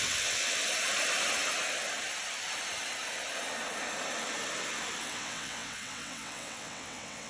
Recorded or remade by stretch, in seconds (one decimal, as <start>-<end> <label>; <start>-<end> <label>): 0.0-0.6 remade; 0.6-5.0 recorded; 5.0-7.3 remade